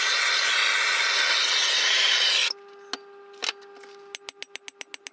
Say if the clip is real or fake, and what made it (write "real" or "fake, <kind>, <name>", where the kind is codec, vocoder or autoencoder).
real